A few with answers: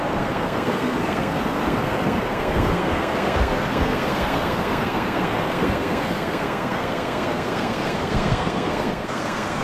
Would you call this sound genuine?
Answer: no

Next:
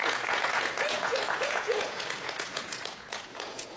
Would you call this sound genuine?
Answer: no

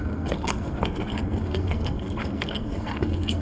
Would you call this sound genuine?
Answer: no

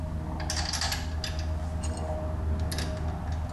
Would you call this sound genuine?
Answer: yes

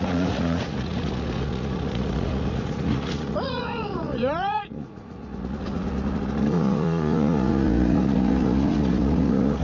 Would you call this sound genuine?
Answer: no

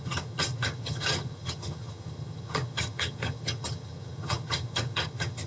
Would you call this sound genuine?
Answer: no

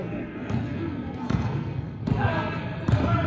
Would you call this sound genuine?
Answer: no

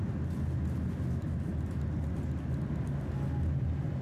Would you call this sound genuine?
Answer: yes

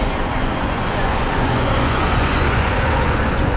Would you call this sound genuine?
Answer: no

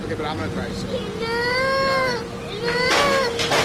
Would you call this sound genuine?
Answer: yes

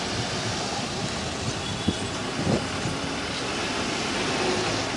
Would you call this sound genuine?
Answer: yes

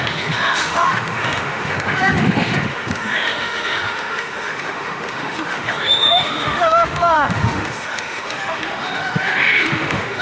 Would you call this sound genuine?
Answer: no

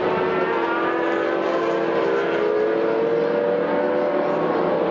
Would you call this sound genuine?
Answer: yes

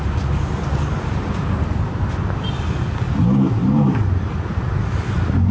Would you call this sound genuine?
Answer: yes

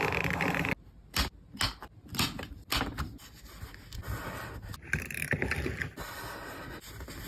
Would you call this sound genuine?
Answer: yes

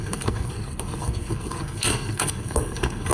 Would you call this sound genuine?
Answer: no